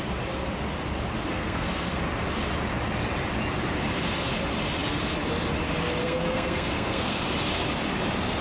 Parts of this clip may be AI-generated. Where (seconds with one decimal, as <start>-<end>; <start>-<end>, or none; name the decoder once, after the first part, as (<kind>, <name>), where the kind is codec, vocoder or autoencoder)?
1.3-2.0 (codec, SNAC); 6.0-7.2